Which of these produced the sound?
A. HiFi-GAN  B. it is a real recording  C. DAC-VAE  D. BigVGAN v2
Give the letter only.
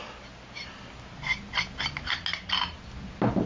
B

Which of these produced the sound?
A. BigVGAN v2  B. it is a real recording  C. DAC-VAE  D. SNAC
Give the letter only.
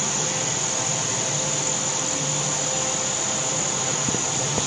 B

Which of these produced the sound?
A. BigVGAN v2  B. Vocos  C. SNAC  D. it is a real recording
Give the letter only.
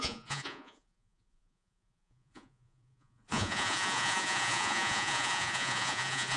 B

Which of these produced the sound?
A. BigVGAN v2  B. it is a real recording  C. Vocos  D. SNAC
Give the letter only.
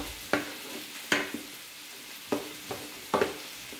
B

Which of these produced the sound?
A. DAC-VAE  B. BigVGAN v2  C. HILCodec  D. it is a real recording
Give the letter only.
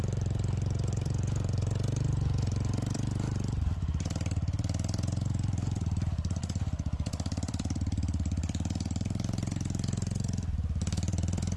B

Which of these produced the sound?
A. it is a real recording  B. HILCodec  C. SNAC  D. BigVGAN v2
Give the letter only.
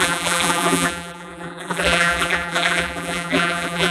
D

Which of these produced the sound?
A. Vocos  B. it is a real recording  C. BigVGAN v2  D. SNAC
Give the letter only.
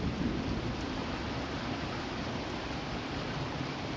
B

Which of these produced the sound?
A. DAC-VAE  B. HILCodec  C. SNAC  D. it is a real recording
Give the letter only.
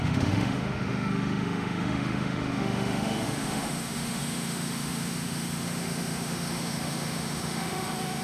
A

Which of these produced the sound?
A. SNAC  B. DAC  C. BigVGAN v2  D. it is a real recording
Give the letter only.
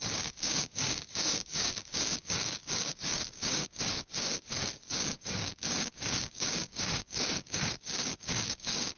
B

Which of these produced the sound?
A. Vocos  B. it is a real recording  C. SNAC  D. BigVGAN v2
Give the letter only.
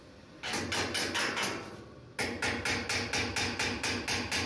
B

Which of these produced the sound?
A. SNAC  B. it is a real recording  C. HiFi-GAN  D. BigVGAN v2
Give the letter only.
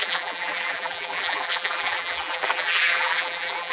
D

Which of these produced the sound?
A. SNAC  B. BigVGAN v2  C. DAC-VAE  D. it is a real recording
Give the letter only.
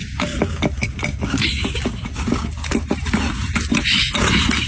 D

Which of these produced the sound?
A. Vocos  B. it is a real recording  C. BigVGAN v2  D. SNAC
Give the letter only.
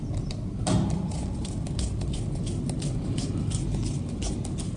B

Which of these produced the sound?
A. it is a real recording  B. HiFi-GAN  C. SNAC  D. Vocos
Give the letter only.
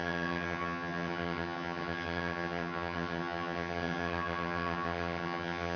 B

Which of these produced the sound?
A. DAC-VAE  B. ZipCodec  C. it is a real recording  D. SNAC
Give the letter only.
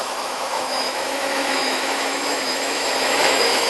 A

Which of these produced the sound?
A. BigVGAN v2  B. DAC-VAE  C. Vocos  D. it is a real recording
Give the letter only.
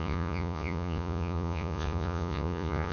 C